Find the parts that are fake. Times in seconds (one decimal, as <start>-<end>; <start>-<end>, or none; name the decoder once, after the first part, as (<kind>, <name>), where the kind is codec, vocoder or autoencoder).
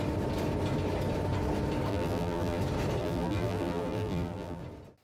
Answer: 1.9-2.6 (vocoder, BigVGAN v2); 3.0-4.6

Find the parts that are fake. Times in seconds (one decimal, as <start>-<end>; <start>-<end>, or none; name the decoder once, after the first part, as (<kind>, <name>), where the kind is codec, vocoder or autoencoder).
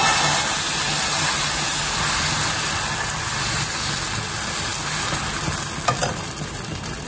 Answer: 6.0-7.1 (vocoder, BigVGAN v2)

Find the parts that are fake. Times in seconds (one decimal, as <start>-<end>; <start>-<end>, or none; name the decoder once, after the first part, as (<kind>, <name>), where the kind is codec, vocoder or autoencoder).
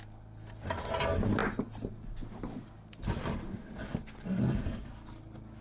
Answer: none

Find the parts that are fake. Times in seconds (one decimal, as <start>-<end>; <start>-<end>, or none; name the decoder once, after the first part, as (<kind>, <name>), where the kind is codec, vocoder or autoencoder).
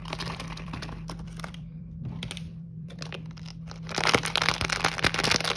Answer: 0.0-3.4 (vocoder, BigVGAN v2)